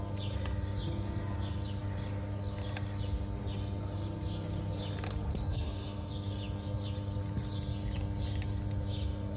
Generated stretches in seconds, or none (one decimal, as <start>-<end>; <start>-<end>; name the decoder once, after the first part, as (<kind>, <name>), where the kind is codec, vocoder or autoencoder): 5.5-6.1 (codec, SNAC)